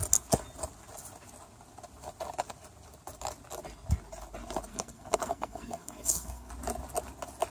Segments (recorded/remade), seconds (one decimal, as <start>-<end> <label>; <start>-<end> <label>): 0.0-4.7 recorded; 4.7-6.5 remade; 6.5-7.5 recorded